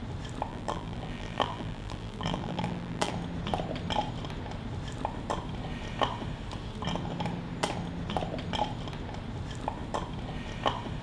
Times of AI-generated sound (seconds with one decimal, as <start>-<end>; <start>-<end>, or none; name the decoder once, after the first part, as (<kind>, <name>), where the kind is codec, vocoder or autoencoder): 0.5-3.1 (vocoder, BigVGAN v2)